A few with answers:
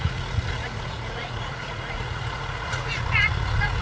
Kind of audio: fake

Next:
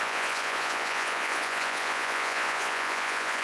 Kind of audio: fake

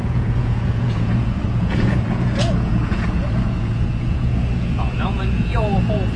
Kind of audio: fake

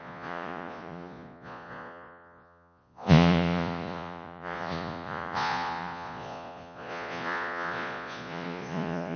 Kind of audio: fake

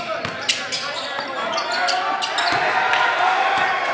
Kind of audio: real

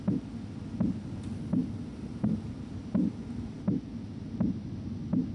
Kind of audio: real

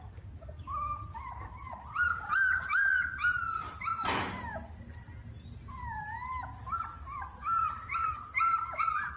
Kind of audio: real